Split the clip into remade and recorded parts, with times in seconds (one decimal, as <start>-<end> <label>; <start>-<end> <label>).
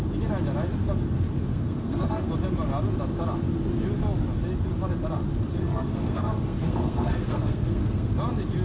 0.0-1.5 recorded; 1.5-2.3 remade; 2.3-5.6 recorded; 5.6-8.1 remade; 8.1-8.6 recorded